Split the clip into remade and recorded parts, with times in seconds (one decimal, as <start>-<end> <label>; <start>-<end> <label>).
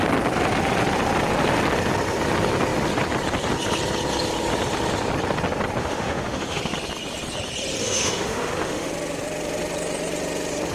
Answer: 0.0-5.8 recorded; 5.8-6.6 remade; 6.6-7.8 recorded; 7.8-8.9 remade; 8.9-10.7 recorded